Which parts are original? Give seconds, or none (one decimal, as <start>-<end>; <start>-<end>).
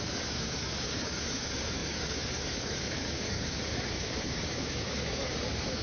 none